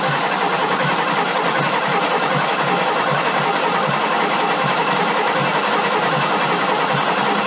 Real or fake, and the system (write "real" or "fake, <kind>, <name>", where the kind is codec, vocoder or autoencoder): real